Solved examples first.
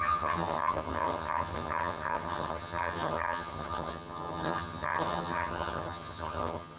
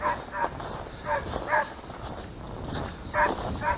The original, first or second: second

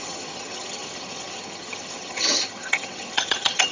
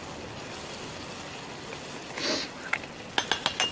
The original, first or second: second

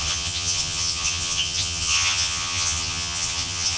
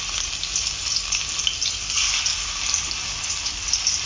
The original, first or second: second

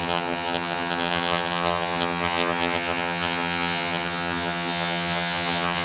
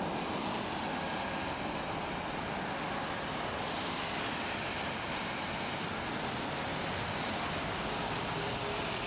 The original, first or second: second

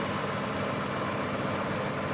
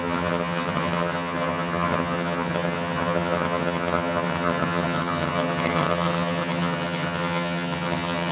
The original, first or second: first